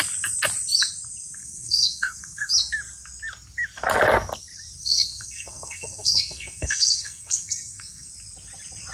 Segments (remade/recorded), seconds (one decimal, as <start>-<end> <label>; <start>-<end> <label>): 0.0-1.4 recorded; 1.4-2.5 remade; 2.5-4.8 recorded; 4.8-8.1 remade; 8.1-8.9 recorded